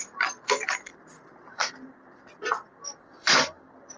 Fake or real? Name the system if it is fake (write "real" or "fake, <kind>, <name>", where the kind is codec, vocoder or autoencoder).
fake, vocoder, BigVGAN v2